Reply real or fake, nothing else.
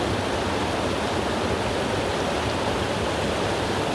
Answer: real